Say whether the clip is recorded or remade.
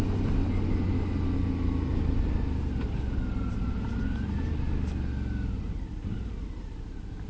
recorded